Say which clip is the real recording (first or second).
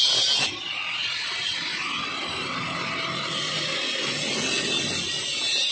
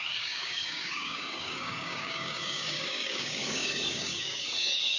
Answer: first